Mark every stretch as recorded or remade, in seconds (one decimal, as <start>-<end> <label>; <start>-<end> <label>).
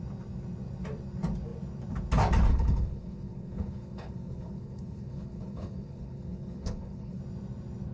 0.0-2.5 recorded; 2.5-7.2 remade; 7.2-7.9 recorded